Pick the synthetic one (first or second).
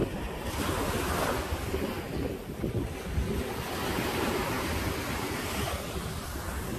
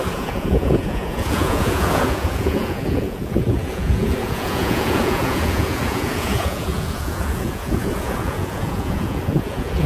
second